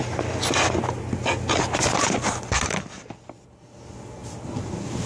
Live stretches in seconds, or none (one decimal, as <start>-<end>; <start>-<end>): 0.0-5.1